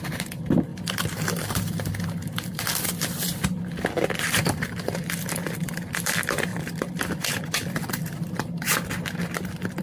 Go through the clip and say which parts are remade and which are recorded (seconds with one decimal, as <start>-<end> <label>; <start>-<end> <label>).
0.0-0.7 recorded; 0.7-5.7 remade; 5.7-6.5 recorded; 6.5-7.9 remade; 7.9-9.8 recorded